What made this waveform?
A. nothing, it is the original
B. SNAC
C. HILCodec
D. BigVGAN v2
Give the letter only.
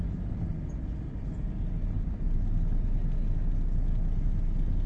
A